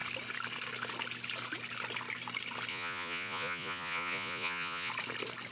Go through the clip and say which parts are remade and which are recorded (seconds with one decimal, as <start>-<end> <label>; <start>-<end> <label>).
0.0-2.7 recorded; 2.7-4.9 remade; 4.9-5.5 recorded